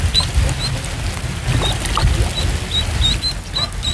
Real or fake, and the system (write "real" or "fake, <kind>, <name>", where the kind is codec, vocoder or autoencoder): real